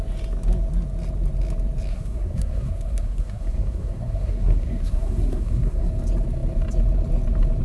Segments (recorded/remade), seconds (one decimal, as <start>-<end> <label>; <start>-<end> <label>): 0.0-1.9 recorded; 1.9-5.9 remade; 5.9-7.6 recorded